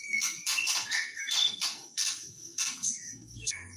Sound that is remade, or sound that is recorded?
remade